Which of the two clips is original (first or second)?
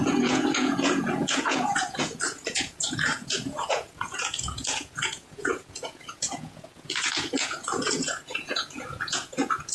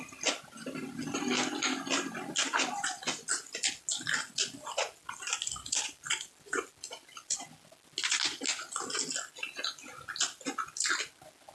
second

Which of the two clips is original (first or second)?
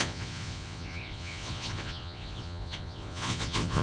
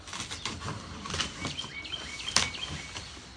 second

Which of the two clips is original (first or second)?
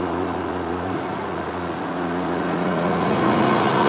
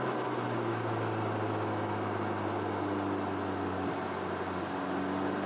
second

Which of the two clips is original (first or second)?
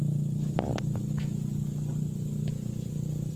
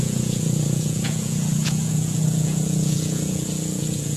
first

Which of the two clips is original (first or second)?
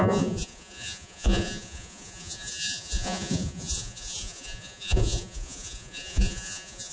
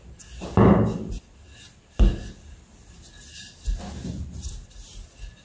second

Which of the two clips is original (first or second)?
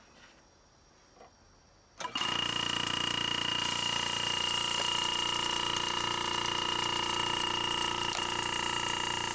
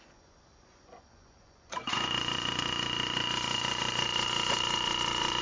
first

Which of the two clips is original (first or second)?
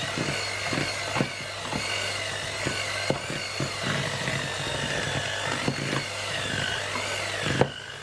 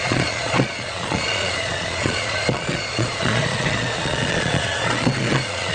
first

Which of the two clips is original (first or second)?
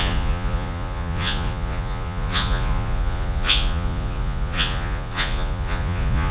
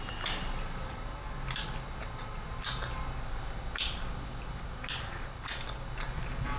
second